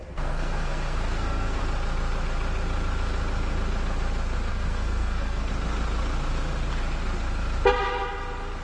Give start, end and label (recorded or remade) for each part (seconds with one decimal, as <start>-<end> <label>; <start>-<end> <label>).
0.0-1.6 remade; 1.6-4.5 recorded; 4.5-5.5 remade; 5.5-8.6 recorded